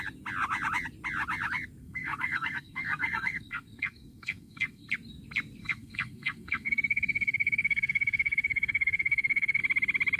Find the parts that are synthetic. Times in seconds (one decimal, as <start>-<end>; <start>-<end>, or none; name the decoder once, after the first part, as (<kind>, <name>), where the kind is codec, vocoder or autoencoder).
1.8-4.9 (codec, SNAC); 5.6-9.6